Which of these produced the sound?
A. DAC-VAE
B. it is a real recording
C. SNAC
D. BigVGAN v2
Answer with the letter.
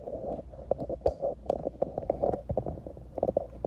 D